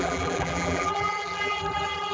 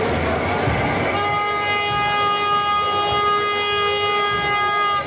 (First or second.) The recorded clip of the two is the second